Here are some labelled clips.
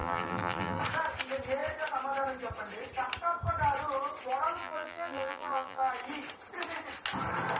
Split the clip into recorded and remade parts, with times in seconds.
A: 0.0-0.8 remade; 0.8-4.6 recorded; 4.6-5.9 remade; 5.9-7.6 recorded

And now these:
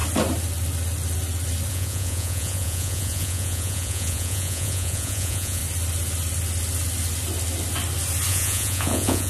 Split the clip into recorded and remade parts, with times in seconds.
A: 0.0-1.7 recorded; 1.7-5.6 remade; 5.6-8.3 recorded; 8.3-9.3 remade

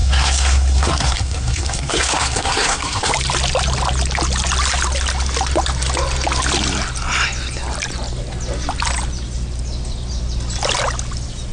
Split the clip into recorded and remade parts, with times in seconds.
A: 0.0-3.1 remade; 3.1-11.5 recorded

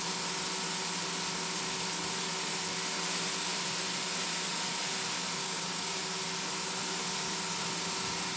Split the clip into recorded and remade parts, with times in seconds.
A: 0.0-5.4 recorded; 5.4-6.0 remade; 6.0-8.4 recorded